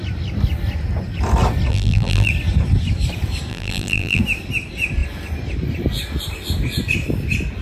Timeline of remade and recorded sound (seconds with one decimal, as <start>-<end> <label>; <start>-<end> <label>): 0.0-1.7 recorded; 1.7-2.3 remade; 2.3-3.5 recorded; 3.5-4.2 remade; 4.2-7.6 recorded